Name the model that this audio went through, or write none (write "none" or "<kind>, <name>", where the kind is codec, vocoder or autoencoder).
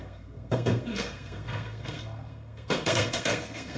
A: codec, SNAC